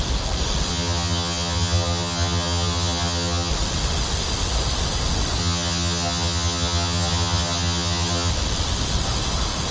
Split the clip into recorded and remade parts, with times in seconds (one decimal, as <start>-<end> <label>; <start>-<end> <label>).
0.0-0.7 recorded; 0.7-3.5 remade; 3.5-5.4 recorded; 5.4-8.3 remade; 8.3-9.7 recorded